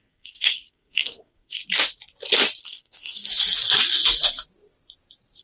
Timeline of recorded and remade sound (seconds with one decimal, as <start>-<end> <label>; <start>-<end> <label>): 0.0-1.6 remade; 1.6-2.6 recorded; 2.6-3.3 remade; 3.3-5.4 recorded